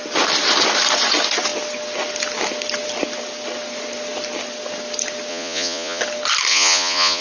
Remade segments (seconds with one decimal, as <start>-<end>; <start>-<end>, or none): 5.3-6.0; 6.5-7.2